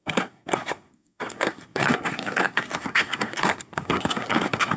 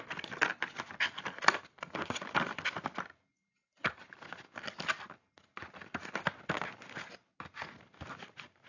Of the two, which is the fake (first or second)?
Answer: first